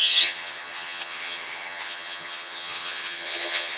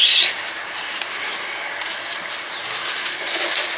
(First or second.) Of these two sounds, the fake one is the first